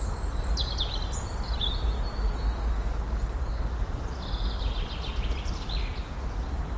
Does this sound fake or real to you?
real